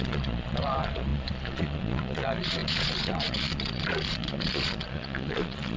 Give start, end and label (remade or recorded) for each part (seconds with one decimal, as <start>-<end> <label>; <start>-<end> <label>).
0.0-5.8 remade